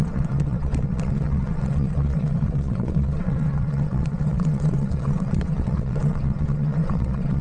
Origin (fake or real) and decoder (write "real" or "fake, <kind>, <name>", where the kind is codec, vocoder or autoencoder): fake, vocoder, WaveNeXt